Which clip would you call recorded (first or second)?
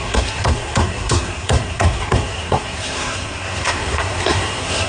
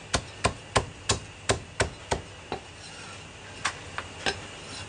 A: second